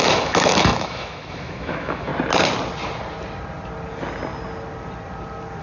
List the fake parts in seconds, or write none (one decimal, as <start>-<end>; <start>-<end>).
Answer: 0.0-2.1